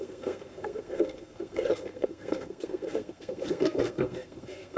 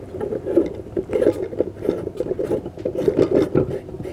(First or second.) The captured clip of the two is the second